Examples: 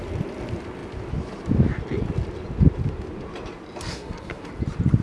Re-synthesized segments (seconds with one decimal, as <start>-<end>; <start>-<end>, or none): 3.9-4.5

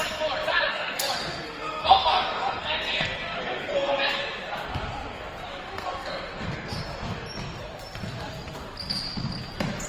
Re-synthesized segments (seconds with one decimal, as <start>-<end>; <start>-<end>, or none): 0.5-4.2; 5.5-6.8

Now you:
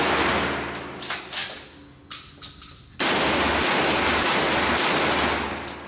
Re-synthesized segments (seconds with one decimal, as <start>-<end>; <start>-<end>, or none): none

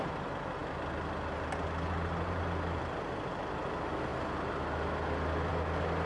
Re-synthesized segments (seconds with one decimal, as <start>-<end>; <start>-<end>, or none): none

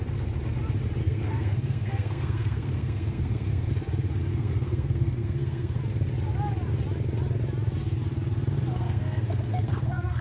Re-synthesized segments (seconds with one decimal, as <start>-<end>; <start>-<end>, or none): 1.0-3.7; 4.3-5.8; 8.7-10.2